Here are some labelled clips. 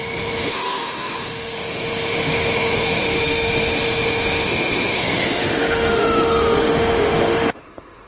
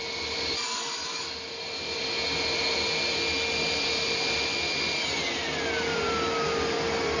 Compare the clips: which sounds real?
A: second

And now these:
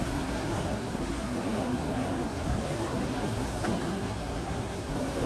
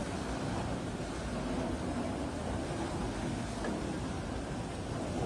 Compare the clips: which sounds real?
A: second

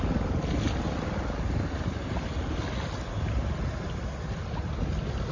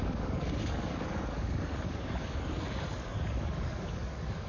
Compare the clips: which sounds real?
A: first